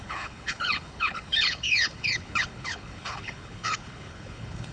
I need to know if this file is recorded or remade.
remade